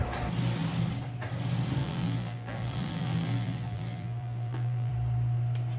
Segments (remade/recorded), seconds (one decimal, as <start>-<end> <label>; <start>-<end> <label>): 0.0-1.8 recorded; 1.8-4.9 remade; 4.9-5.8 recorded